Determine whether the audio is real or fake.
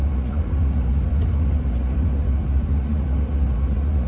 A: fake